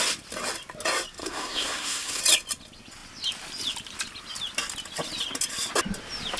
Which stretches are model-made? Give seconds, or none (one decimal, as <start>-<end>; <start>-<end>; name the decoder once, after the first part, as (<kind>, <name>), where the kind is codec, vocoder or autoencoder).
1.2-2.2 (codec, SNAC)